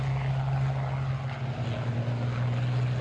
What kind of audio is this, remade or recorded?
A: recorded